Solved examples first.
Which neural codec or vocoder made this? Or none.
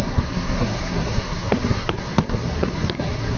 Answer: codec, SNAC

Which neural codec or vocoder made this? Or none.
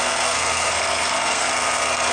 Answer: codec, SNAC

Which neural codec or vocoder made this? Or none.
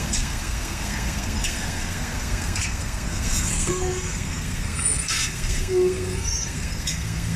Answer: codec, SNAC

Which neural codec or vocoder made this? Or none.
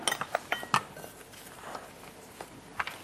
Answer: none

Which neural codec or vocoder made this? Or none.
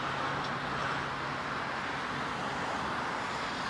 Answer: none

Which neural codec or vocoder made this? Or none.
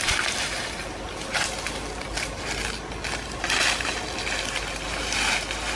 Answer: none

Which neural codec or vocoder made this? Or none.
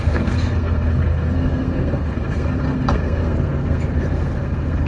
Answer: codec, SNAC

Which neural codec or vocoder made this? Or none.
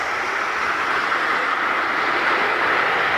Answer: none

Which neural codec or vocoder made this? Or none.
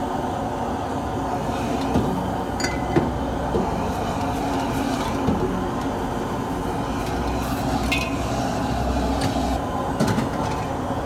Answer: none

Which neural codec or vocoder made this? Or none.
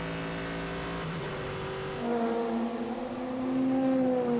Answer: none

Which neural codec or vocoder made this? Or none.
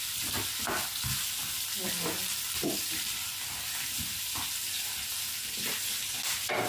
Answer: none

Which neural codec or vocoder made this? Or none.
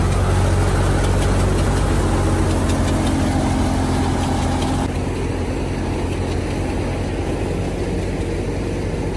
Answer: none